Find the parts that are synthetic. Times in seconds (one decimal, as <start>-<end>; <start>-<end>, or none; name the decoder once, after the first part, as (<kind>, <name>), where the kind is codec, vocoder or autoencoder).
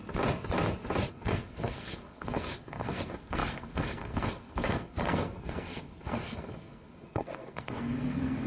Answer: 1.1-8.5 (codec, SNAC)